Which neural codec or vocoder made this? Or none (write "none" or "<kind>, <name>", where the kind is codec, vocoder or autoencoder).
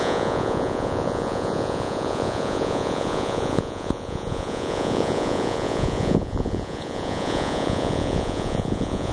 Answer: vocoder, Vocos